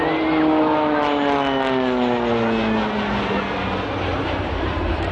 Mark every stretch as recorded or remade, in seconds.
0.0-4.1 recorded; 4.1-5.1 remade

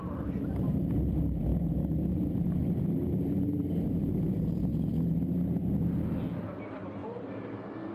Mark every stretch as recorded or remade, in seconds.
0.0-1.5 remade; 1.5-2.1 recorded; 2.1-4.7 remade; 4.7-6.6 recorded; 6.6-7.9 remade

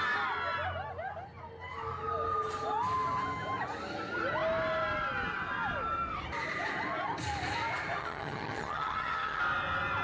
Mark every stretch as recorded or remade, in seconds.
0.0-8.0 recorded; 8.0-9.4 remade; 9.4-10.0 recorded

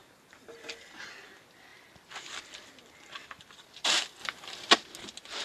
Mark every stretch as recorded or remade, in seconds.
0.0-1.7 recorded; 1.7-2.3 remade; 2.3-4.2 recorded; 4.2-4.7 remade; 4.7-5.4 recorded

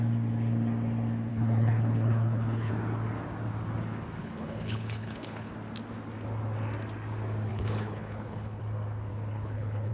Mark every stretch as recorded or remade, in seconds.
0.0-1.3 recorded; 1.3-2.7 remade; 2.7-4.2 recorded; 4.2-5.5 remade; 5.5-7.5 recorded; 7.5-8.6 remade; 8.6-9.1 recorded; 9.1-9.9 remade

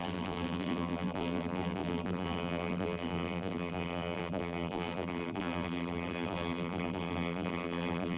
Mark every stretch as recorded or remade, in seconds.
0.0-8.2 remade

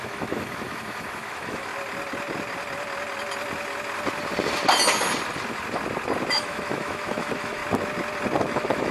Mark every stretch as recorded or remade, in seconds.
0.0-1.7 remade; 1.7-6.3 recorded; 6.3-7.6 remade; 7.6-8.4 recorded; 8.4-8.9 remade